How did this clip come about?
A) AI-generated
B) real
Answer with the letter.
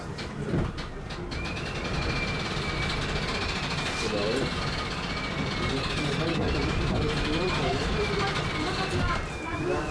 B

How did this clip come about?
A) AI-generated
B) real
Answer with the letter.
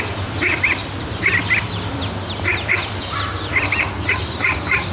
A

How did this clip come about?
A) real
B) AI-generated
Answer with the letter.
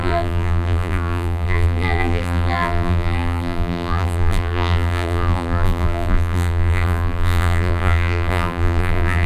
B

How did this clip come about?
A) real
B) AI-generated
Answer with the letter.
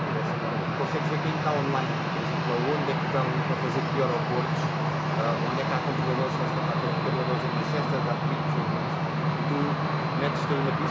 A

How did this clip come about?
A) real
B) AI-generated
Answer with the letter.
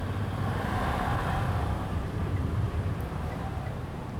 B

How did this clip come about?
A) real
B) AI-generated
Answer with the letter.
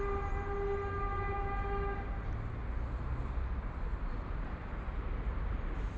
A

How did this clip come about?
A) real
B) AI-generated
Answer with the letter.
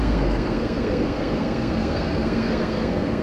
B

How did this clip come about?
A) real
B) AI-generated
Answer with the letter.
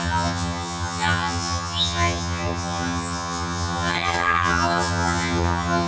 B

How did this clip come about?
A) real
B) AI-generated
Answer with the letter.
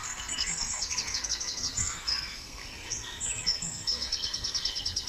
B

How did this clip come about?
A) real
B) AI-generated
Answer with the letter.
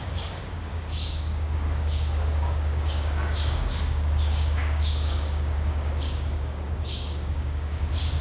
B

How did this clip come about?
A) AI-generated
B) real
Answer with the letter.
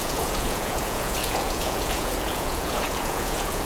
A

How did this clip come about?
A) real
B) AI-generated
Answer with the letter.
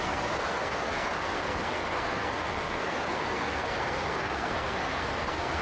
B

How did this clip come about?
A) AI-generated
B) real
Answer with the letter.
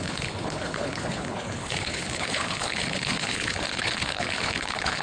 A